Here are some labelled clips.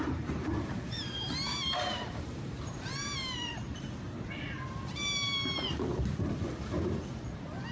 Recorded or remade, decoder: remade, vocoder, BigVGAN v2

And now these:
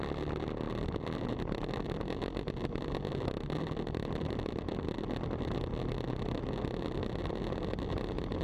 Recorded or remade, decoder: recorded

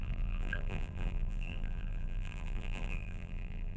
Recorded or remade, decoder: remade, vocoder, BigVGAN v2